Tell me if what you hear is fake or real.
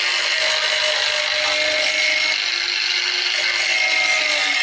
real